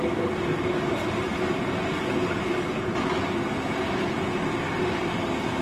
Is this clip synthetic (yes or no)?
no